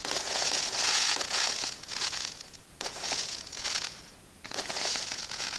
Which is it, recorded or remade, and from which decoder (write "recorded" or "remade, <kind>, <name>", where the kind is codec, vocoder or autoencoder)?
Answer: remade, vocoder, Vocos